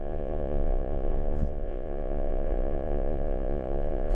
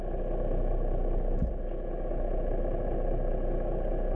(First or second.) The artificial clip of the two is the first